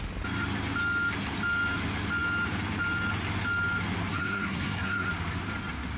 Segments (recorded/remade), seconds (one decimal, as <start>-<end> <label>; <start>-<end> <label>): 0.0-4.1 recorded; 4.1-5.1 remade; 5.1-6.0 recorded